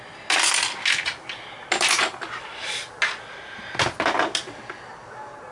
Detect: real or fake real